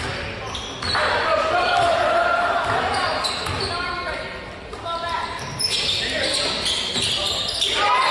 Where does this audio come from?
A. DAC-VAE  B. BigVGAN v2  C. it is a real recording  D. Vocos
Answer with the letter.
C